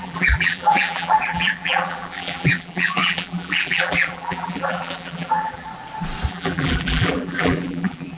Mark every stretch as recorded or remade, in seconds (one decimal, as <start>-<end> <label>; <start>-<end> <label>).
0.0-5.7 remade; 5.7-6.3 recorded; 6.3-8.2 remade

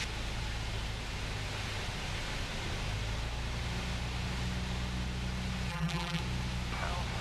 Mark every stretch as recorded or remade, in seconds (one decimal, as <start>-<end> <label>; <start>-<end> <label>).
0.0-5.7 recorded; 5.7-6.2 remade; 6.2-7.2 recorded

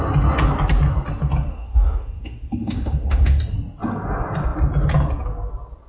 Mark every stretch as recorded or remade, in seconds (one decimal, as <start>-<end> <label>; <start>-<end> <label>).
0.0-1.5 recorded; 1.5-3.4 remade; 3.4-5.9 recorded

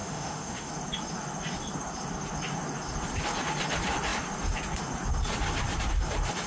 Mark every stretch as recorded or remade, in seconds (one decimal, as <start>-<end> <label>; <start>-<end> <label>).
0.0-0.7 remade; 0.7-6.5 recorded

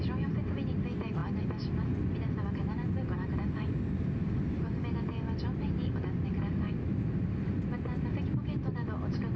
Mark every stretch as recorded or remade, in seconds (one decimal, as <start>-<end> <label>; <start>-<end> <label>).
0.0-9.4 recorded

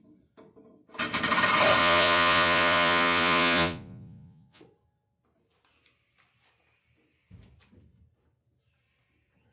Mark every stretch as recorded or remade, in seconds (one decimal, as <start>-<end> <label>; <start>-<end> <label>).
0.0-1.8 recorded; 1.8-4.6 remade; 4.6-9.5 recorded

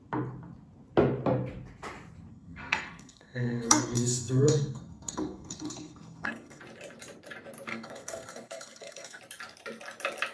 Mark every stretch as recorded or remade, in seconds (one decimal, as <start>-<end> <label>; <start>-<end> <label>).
0.0-2.3 recorded; 2.3-6.6 remade; 6.6-7.7 recorded; 7.7-9.2 remade; 9.2-10.3 recorded